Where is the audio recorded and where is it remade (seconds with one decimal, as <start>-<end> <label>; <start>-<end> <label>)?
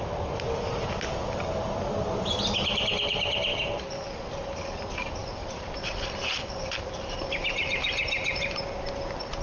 0.0-5.2 recorded; 5.2-8.6 remade; 8.6-9.4 recorded